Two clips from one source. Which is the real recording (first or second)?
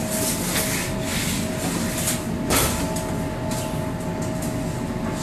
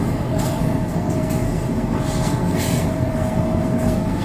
first